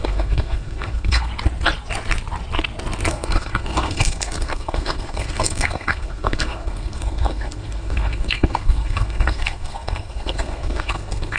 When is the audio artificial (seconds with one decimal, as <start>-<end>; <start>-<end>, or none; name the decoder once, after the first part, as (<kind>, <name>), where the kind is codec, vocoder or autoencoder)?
0.0-1.3 (codec, SNAC); 3.1-11.4